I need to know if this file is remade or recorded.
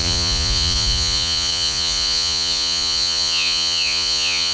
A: remade